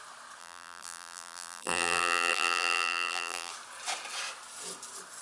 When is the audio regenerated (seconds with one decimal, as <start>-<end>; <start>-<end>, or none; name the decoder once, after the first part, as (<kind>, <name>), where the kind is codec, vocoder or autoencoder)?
0.4-3.5 (vocoder, BigVGAN v2)